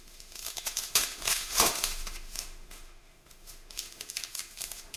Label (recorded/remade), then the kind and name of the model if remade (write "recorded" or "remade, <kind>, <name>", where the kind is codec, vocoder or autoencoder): remade, autoencoder, DAC-VAE